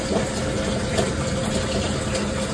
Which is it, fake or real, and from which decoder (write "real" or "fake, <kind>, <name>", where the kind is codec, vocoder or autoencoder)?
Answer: real